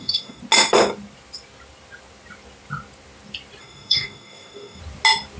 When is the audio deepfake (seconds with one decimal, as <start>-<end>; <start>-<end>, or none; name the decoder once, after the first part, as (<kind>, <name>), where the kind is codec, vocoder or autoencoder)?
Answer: 0.0-0.4 (codec, DAC); 3.6-4.8